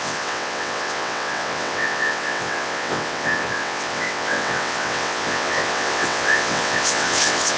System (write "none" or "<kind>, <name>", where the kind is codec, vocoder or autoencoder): vocoder, WaveNeXt